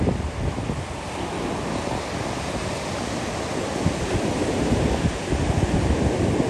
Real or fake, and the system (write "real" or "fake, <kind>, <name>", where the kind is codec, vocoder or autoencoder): real